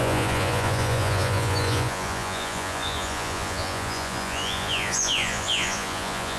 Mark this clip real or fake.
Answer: fake